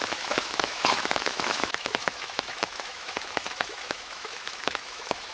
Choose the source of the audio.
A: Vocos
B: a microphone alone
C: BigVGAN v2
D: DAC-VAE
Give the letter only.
D